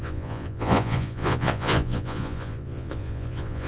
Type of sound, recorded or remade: remade